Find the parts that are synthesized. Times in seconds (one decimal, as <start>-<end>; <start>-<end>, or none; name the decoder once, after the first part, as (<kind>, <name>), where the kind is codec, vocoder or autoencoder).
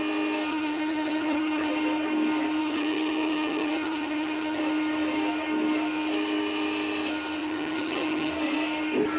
0.5-1.7 (vocoder, HiFi-GAN); 2.6-4.6; 7.4-8.3